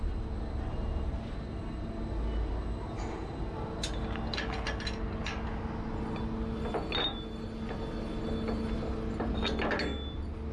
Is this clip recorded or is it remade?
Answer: recorded